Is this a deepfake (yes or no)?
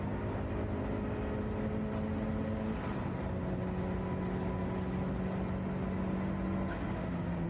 no